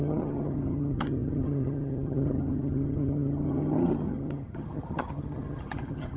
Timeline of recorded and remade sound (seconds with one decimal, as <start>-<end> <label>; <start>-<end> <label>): 0.0-6.2 remade

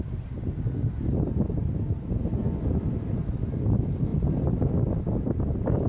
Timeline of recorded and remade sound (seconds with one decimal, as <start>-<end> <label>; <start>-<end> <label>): 0.0-5.9 recorded

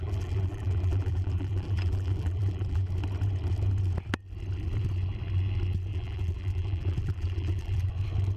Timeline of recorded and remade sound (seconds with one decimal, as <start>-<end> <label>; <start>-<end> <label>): 0.0-2.9 remade; 2.9-5.9 recorded; 5.9-7.9 remade; 7.9-8.4 recorded

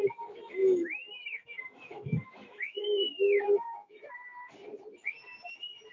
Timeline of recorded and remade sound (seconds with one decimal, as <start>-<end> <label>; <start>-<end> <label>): 0.0-0.6 recorded; 0.6-4.1 remade; 4.1-5.9 recorded

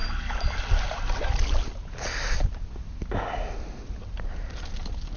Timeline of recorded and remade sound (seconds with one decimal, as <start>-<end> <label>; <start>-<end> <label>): 0.0-5.2 recorded